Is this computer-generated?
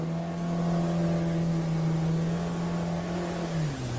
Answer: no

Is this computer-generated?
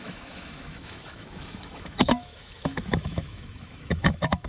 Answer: yes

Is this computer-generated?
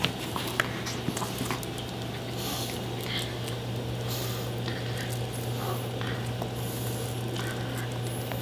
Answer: no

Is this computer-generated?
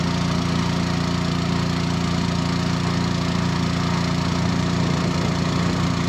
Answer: no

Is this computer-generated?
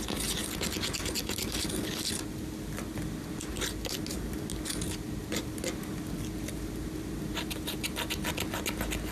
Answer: no